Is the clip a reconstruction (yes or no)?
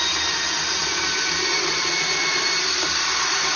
yes